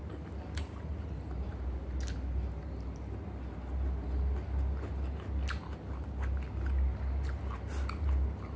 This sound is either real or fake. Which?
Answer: real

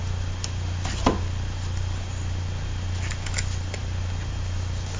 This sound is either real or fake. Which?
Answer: real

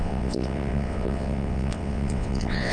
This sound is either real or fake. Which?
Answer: fake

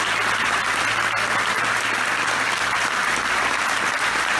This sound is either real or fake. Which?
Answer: real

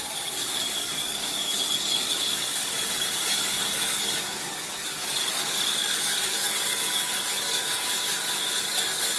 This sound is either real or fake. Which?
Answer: fake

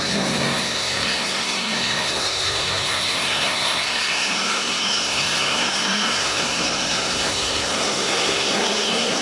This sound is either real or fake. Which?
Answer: fake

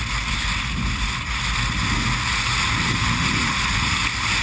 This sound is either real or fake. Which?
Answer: real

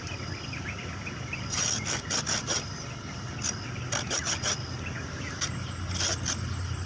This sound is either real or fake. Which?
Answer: real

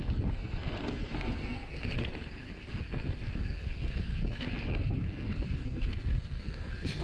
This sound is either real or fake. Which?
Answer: fake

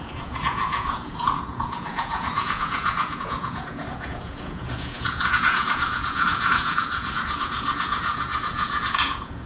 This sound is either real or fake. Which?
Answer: fake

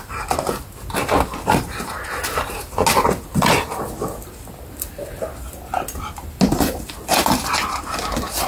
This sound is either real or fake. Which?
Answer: real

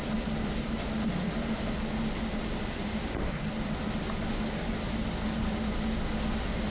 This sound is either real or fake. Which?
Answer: real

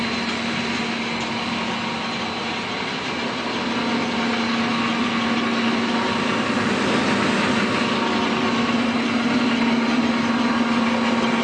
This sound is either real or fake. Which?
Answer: real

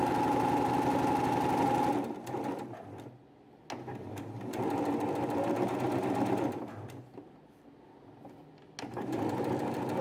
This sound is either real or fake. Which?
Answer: real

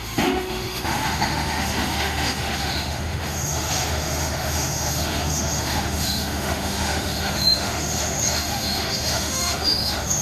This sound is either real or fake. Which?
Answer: fake